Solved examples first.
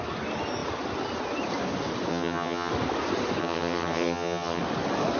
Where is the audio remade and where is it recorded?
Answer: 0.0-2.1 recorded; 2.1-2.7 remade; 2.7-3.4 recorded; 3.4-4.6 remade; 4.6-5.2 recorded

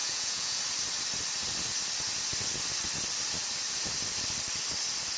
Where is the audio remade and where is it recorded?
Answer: 0.0-0.6 remade; 0.6-5.2 recorded

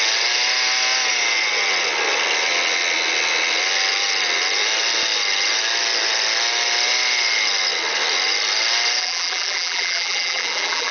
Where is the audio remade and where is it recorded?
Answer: 0.0-9.0 recorded; 9.0-10.9 remade

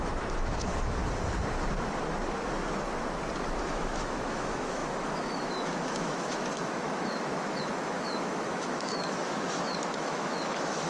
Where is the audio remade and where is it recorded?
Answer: 0.0-1.0 remade; 1.0-3.6 recorded; 3.6-10.9 remade